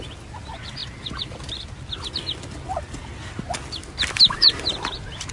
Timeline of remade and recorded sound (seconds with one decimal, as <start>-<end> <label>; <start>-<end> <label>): 0.0-0.8 recorded; 0.8-1.6 remade; 1.6-3.8 recorded; 3.8-5.3 remade